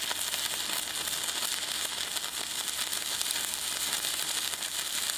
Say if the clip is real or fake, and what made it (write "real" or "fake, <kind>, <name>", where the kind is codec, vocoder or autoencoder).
real